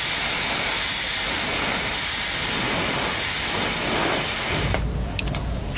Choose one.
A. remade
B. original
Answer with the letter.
B